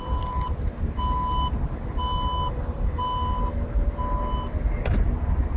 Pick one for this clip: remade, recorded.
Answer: recorded